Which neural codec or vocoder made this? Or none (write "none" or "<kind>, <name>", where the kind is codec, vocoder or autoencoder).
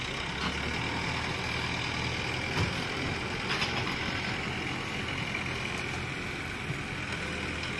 none